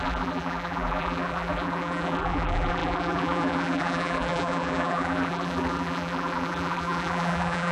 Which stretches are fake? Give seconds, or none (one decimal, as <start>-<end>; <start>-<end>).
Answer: 0.0-7.7